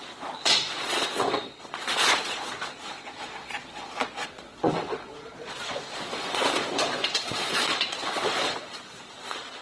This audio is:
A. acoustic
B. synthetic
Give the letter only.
B